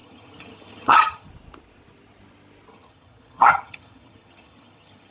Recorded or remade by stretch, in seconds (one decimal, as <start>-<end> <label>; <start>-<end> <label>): 0.0-1.3 remade; 1.3-2.7 recorded; 2.7-5.1 remade